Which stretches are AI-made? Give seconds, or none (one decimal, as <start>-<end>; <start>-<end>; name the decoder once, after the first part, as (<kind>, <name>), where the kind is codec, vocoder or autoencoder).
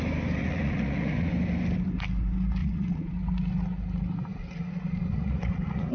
0.4-1.3 (vocoder, Vocos); 2.6-3.1; 4.3-5.9